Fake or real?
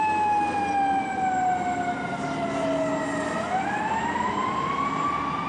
real